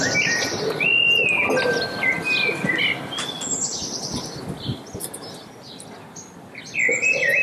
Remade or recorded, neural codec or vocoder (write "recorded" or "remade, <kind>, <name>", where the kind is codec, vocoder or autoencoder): recorded